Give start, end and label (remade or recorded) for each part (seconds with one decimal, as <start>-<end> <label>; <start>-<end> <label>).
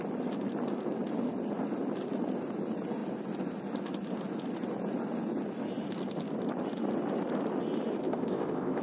0.0-8.0 recorded; 8.0-8.8 remade